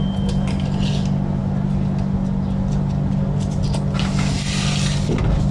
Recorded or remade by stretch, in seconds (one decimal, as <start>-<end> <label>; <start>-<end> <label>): 0.0-5.5 recorded